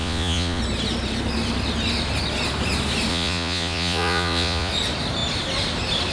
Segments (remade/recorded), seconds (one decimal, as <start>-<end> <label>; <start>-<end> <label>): 0.0-0.6 remade; 0.6-3.1 recorded; 3.1-4.7 remade; 4.7-6.1 recorded